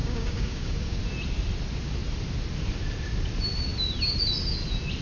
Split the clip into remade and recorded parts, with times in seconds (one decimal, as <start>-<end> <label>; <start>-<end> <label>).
0.0-1.0 remade; 1.0-5.0 recorded